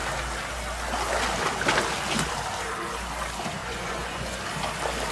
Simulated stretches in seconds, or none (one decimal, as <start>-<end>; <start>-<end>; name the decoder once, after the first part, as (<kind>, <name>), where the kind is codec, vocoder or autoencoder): 3.6-4.4 (vocoder, Vocos)